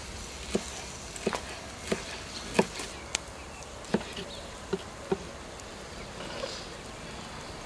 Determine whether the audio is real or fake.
real